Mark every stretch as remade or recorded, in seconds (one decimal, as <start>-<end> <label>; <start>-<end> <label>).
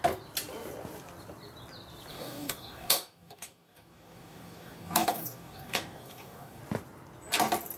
0.0-2.1 recorded; 2.1-6.6 remade; 6.6-7.8 recorded